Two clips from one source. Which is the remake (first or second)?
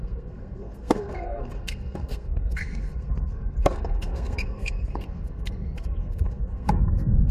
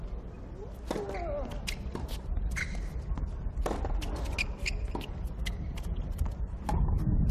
first